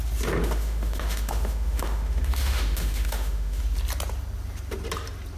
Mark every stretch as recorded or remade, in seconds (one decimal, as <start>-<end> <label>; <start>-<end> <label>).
0.0-0.4 recorded; 0.4-3.6 remade; 3.6-5.4 recorded